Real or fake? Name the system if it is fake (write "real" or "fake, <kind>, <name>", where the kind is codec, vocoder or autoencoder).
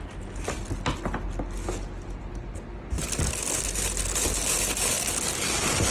real